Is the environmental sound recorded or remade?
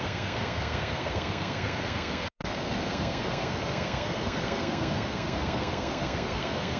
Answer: remade